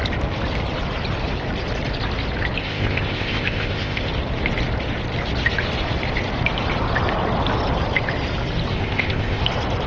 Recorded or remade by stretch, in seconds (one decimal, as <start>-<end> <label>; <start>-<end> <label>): 0.0-2.6 recorded; 2.6-4.1 remade; 4.1-8.7 recorded; 8.7-9.4 remade; 9.4-9.9 recorded